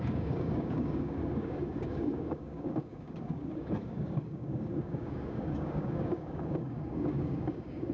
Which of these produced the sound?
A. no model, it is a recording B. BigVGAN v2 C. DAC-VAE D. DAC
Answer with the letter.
D